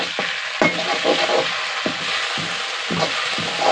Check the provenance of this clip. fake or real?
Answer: real